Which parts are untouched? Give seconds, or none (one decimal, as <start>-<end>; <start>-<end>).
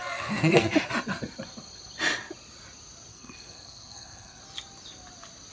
0.9-3.1; 4.4-5.5